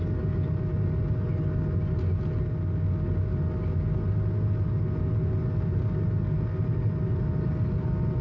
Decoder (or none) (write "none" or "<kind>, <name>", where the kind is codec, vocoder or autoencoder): none